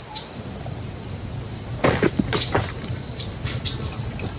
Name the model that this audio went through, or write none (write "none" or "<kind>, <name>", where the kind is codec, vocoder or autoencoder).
vocoder, BigVGAN v2